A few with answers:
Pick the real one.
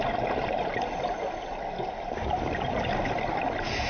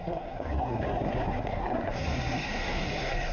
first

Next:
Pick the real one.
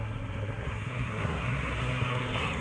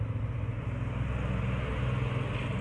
second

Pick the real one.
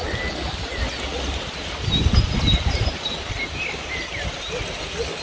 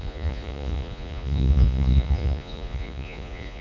first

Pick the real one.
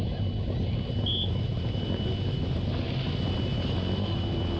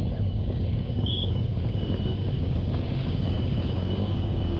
first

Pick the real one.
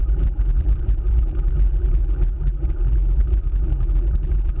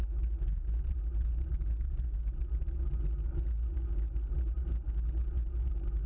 second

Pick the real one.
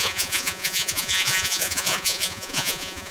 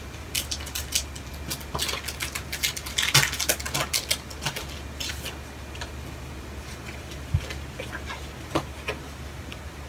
second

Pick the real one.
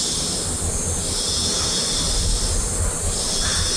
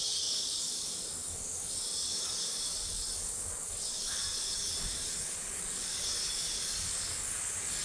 first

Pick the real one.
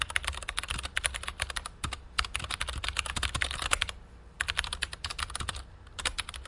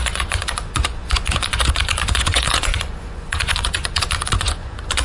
first